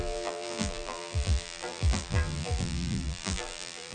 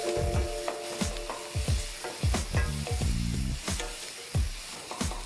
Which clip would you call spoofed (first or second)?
first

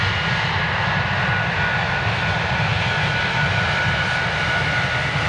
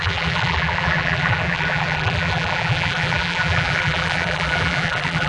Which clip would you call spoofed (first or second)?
second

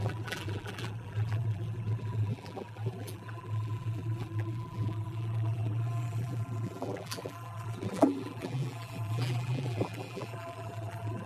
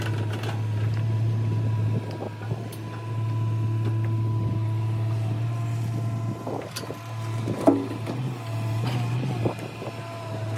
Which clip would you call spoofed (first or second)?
first